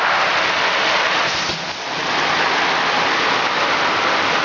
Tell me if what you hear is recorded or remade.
recorded